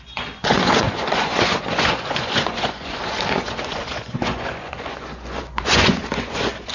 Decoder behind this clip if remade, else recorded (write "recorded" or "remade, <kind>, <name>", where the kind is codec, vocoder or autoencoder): remade, vocoder, Vocos